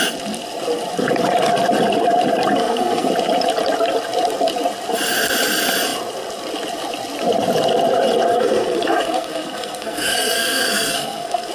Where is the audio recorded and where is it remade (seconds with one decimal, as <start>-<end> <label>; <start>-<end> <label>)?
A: 0.0-2.6 recorded; 2.6-3.1 remade; 3.1-8.3 recorded; 8.3-11.5 remade